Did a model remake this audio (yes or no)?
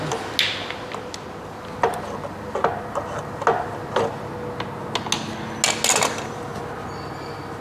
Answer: no